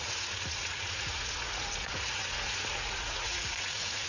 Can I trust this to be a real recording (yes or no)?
no